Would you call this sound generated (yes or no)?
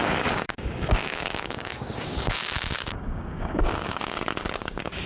yes